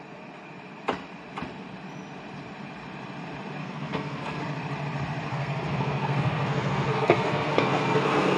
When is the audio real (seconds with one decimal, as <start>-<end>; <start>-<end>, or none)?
0.0-3.6; 4.4-5.3